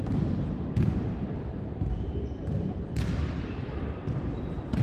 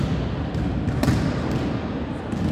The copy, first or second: first